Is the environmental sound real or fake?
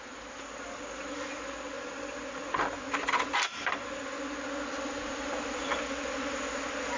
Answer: real